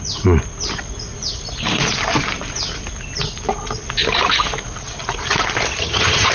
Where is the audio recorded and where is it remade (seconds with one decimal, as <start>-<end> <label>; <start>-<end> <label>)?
0.0-5.8 recorded; 5.8-6.3 remade